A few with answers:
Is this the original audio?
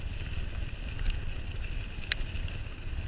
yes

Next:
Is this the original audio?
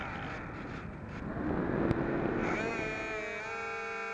yes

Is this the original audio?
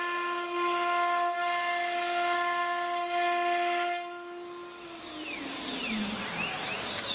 yes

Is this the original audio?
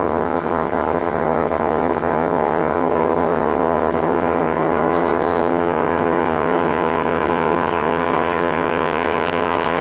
no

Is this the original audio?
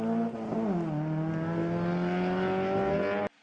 yes